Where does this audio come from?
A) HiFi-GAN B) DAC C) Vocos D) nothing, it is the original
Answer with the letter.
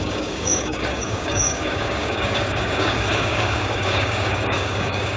B